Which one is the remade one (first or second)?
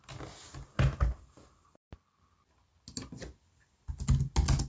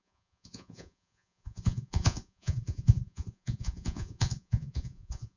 second